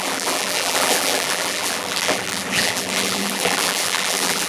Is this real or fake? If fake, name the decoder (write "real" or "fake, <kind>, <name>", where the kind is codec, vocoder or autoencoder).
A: fake, vocoder, BigVGAN v2